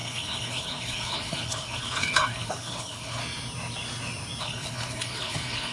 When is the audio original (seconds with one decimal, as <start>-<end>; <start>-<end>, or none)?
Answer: 3.2-4.4